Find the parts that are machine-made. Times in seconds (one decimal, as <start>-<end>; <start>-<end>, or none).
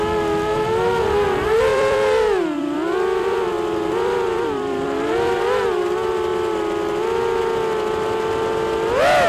1.7-5.4